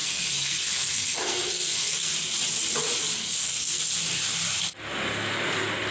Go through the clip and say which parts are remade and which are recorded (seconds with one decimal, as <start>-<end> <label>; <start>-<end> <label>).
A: 0.0-2.1 remade; 2.1-3.2 recorded; 3.2-3.8 remade; 3.8-5.9 recorded